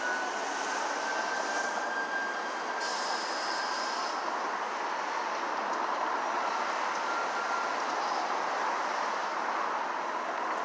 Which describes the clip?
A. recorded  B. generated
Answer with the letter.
A